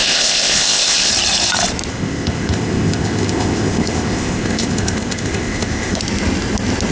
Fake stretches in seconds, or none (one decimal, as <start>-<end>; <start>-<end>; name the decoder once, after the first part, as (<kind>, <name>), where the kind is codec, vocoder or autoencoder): 0.0-1.1 (codec, ZipCodec); 1.9-6.0